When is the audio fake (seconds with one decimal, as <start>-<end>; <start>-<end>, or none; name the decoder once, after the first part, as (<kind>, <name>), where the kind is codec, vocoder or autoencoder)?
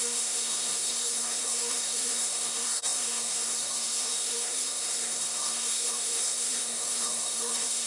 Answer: 0.0-7.9 (codec, SNAC)